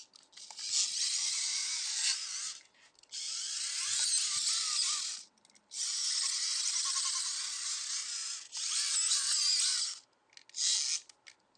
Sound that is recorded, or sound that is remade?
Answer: recorded